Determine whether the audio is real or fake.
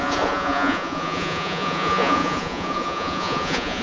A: fake